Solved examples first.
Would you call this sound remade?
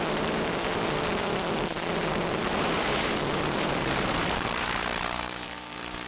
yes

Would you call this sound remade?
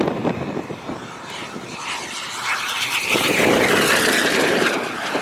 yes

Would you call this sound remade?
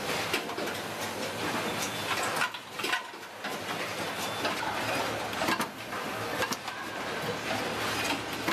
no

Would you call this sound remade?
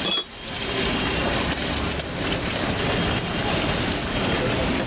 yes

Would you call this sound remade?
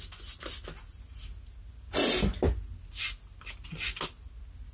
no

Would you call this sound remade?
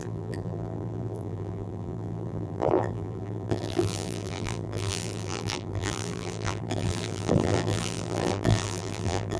yes